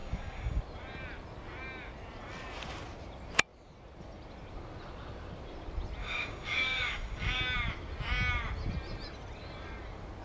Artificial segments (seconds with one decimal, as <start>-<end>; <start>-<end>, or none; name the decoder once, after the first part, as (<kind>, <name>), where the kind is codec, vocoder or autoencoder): 0.0-0.6 (codec, DAC); 6.0-7.4